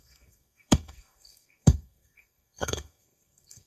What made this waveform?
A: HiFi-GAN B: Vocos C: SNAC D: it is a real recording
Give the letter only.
C